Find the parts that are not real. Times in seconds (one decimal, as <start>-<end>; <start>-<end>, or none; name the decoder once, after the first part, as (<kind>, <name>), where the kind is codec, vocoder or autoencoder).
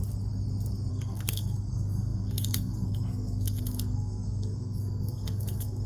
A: 0.9-5.9 (codec, SNAC)